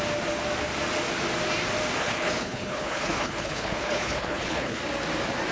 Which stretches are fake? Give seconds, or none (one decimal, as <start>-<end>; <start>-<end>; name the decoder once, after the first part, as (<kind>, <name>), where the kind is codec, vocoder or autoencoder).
2.0-4.8 (codec, HILCodec)